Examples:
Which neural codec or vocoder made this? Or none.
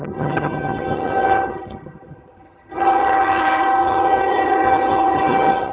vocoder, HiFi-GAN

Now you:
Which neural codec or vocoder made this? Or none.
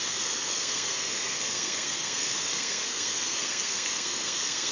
codec, SNAC